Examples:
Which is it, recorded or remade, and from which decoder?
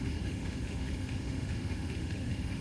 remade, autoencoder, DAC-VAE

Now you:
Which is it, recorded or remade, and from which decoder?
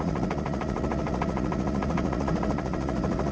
remade, vocoder, Vocos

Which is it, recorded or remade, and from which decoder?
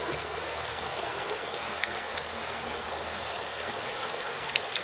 remade, codec, SNAC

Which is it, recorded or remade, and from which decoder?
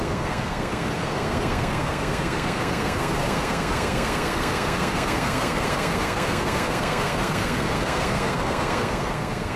remade, codec, SNAC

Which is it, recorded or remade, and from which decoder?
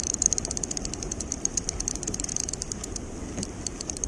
remade, vocoder, BigVGAN v2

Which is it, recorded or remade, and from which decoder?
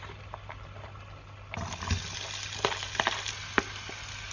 recorded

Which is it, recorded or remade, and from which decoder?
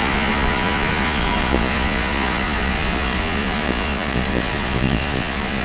remade, vocoder, Vocos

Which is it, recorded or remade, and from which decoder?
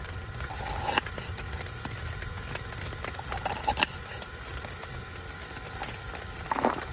recorded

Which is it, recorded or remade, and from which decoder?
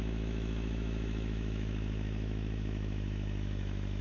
remade, autoencoder, DAC-VAE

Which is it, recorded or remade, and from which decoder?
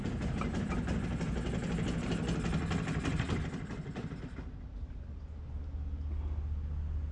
recorded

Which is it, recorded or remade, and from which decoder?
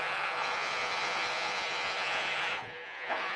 remade, vocoder, Vocos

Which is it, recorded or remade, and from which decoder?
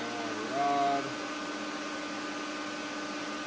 recorded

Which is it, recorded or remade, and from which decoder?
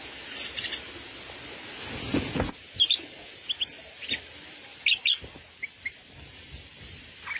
recorded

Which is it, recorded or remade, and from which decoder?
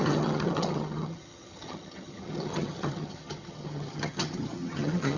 remade, vocoder, HiFi-GAN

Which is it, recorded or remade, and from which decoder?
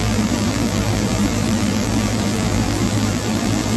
remade, vocoder, BigVGAN v2